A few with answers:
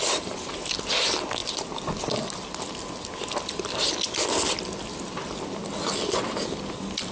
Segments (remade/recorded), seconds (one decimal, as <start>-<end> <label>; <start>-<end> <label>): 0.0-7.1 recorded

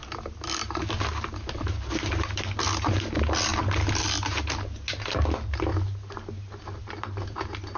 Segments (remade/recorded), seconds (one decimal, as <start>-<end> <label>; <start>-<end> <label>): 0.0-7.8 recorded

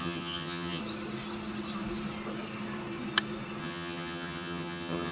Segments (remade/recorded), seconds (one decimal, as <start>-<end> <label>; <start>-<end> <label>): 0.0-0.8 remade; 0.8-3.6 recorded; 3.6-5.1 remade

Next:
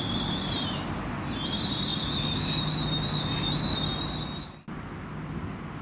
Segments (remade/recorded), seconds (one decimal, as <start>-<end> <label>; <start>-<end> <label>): 0.0-5.8 recorded

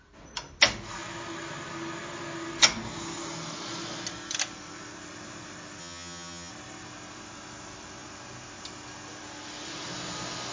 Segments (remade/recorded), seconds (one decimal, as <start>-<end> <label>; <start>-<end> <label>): 0.0-5.8 recorded; 5.8-6.5 remade; 6.5-10.5 recorded